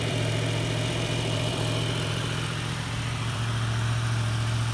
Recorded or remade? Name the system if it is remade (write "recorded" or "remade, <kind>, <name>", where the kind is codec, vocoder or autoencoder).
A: remade, vocoder, BigVGAN v2